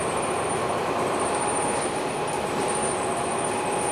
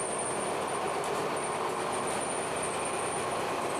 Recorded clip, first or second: second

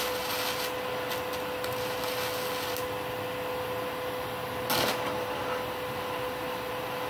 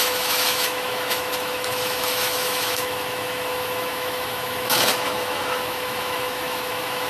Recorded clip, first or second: first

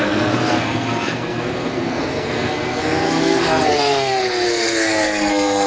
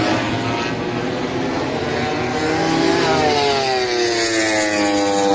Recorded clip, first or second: second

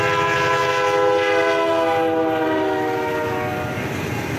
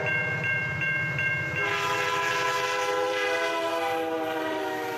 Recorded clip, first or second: first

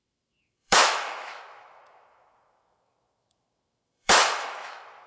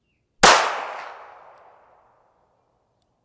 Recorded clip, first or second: second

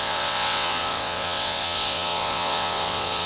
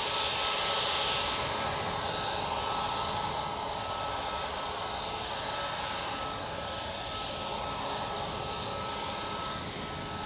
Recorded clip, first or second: second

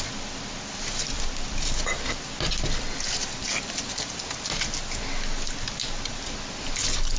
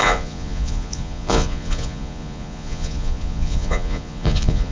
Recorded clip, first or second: first